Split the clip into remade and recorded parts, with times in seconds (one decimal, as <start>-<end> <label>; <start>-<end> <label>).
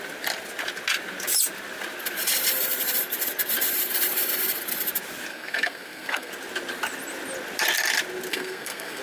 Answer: 0.0-5.3 recorded; 5.3-6.3 remade; 6.3-8.3 recorded; 8.3-9.0 remade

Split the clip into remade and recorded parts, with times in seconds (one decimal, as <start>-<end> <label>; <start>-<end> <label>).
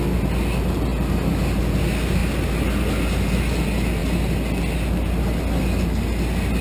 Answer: 0.0-6.6 recorded